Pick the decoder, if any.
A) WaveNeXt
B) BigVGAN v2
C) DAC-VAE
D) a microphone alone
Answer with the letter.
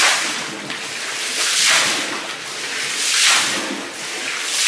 D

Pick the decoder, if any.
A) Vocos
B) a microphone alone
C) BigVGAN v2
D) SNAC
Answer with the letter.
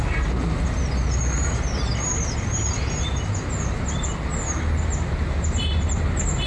B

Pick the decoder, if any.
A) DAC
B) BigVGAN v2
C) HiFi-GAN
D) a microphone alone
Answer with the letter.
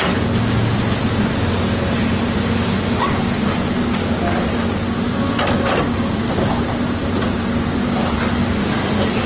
D